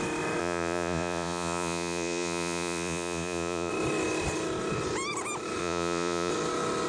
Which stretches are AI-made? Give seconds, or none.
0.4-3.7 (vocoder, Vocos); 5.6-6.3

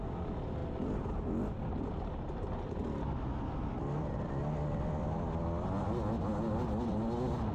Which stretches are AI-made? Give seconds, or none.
none

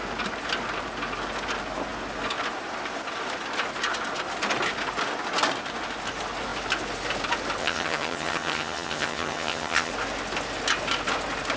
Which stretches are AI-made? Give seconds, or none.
7.6-9.9 (vocoder, HiFi-GAN)

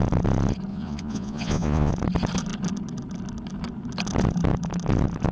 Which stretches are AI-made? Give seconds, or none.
0.7-1.9 (vocoder, Vocos)